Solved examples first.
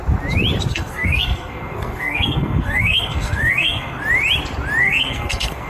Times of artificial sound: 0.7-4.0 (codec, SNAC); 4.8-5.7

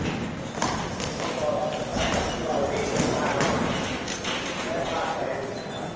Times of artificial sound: none

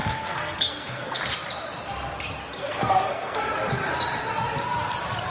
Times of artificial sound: 0.0-1.2 (codec, SNAC); 2.6-3.5

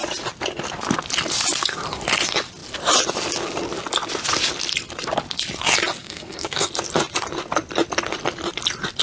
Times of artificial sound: 6.0-6.7 (codec, SNAC)

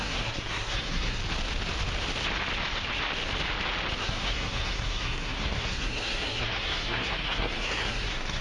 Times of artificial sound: 0.0-1.2 (codec, SNAC); 4.0-8.4

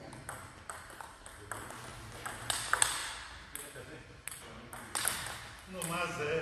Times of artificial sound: none